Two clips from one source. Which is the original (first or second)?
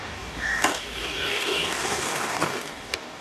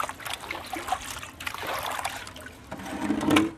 second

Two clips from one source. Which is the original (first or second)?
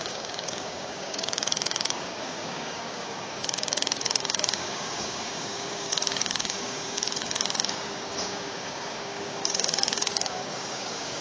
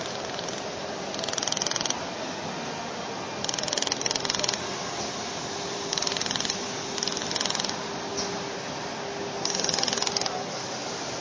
second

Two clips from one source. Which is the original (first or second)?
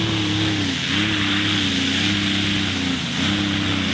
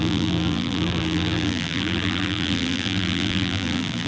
first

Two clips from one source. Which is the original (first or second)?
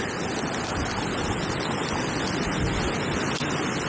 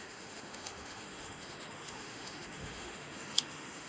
first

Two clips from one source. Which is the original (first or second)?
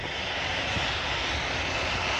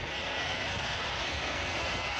first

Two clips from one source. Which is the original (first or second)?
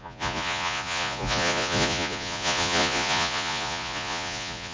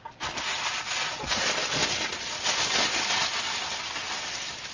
second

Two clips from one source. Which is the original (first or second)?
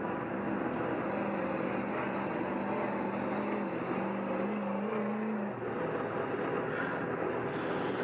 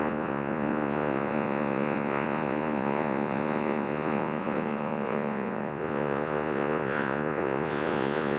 first